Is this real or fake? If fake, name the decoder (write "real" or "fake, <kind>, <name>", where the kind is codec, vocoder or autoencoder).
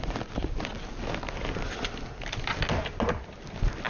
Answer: real